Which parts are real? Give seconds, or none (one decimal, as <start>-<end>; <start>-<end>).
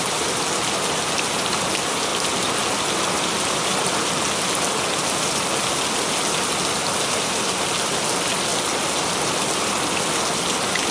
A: 0.0-10.9